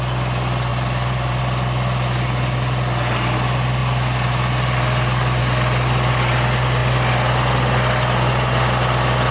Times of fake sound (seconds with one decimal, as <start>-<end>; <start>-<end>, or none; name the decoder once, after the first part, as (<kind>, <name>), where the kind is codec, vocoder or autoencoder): 0.7-1.4 (vocoder, BigVGAN v2)